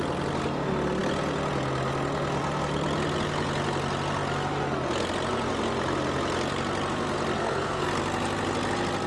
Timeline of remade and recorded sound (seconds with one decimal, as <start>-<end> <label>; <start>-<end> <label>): 0.0-7.4 recorded; 7.4-7.9 remade; 7.9-9.1 recorded

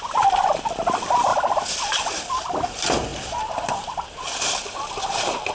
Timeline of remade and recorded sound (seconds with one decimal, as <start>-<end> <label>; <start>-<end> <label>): 0.0-5.5 recorded

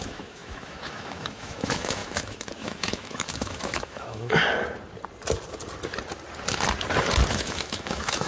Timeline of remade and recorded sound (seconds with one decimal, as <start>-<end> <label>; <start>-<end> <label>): 0.0-4.4 remade; 4.4-7.3 recorded; 7.3-8.3 remade

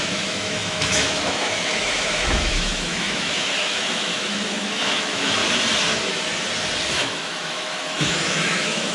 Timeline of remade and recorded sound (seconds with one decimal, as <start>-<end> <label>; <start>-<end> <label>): 0.0-5.4 remade; 5.4-6.9 recorded; 6.9-8.9 remade

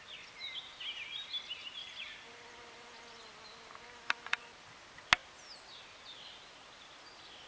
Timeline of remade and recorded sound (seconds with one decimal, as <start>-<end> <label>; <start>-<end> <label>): 0.0-7.5 recorded